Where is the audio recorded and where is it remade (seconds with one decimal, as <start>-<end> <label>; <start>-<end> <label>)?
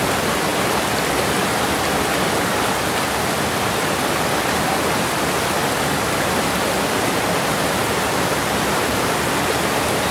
0.0-10.1 recorded